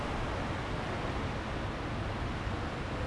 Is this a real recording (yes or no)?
yes